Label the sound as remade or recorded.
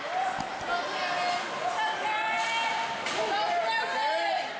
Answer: recorded